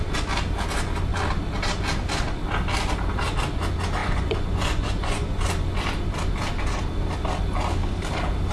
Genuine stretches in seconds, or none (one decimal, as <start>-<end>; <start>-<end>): 0.0-4.0; 5.4-8.5